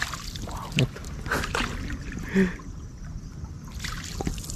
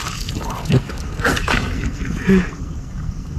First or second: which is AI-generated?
second